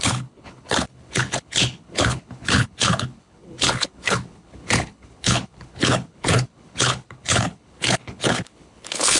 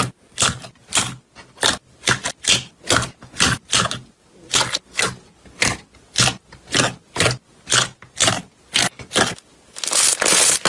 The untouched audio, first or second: second